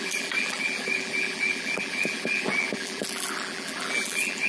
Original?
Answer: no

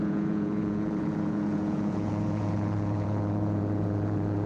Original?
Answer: no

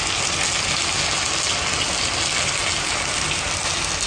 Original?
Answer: yes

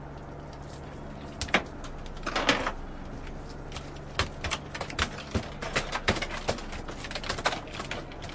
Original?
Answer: yes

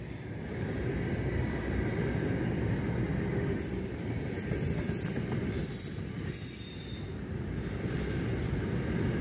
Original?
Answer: yes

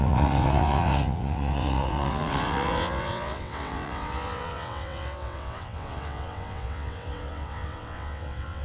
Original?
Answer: no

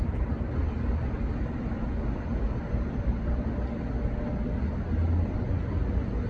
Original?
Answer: yes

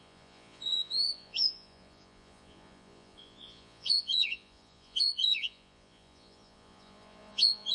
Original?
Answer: no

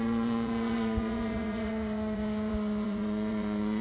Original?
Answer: no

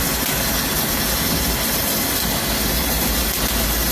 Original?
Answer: yes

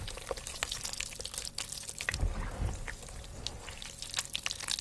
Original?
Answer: yes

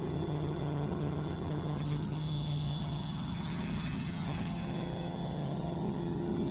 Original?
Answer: no